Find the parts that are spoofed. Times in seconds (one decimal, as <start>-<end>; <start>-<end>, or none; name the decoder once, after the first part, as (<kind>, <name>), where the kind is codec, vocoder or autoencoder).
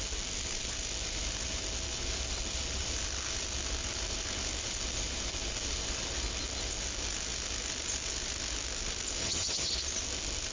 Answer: 9.2-9.7 (vocoder, HiFi-GAN)